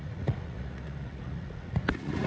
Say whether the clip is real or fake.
fake